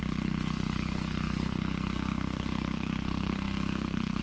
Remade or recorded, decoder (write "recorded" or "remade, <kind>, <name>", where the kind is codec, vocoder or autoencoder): remade, codec, SNAC